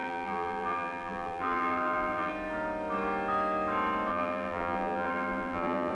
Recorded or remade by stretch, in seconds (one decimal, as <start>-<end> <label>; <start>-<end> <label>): 0.0-2.3 remade; 2.3-4.1 recorded; 4.1-5.9 remade